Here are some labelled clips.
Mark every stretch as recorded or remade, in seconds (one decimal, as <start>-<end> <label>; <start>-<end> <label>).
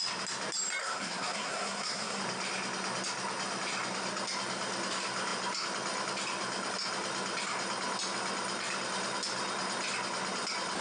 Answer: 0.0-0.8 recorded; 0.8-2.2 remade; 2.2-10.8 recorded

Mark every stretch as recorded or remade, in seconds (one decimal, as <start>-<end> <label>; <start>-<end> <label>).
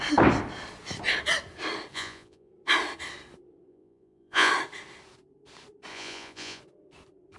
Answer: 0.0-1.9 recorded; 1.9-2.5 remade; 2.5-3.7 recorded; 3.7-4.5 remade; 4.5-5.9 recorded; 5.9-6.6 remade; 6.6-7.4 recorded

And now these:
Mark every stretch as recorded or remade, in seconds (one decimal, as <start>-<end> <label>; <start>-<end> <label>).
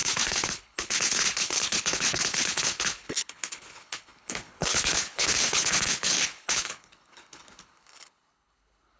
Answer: 0.0-9.0 remade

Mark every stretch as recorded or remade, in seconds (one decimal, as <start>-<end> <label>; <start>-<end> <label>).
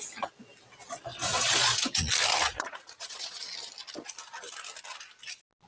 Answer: 0.0-1.1 recorded; 1.1-2.1 remade; 2.1-2.5 recorded; 2.5-3.4 remade; 3.4-5.7 recorded